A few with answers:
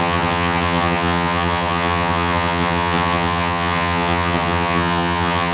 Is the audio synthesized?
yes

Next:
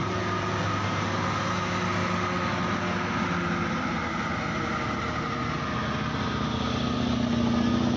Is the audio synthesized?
no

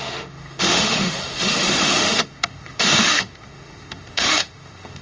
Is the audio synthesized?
yes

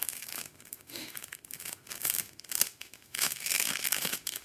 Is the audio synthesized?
yes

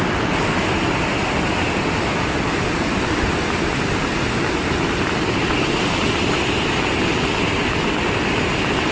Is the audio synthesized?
no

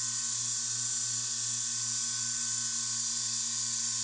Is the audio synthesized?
no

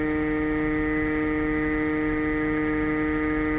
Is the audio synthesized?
yes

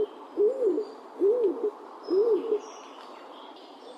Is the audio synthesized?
no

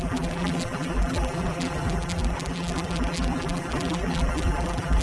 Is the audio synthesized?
yes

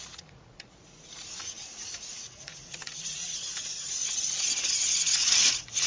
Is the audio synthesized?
yes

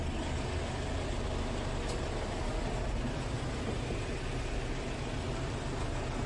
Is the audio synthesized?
no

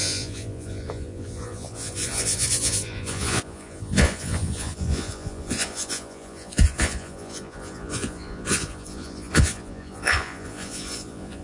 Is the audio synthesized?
yes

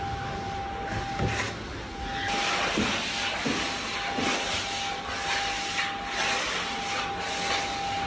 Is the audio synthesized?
no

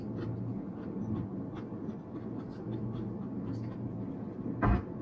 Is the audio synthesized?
no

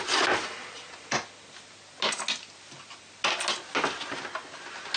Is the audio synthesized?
no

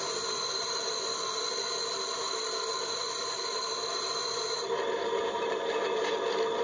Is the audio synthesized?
yes